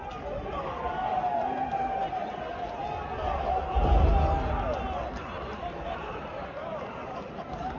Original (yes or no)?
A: yes